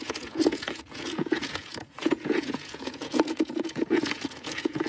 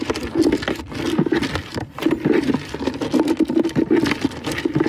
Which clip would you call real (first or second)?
second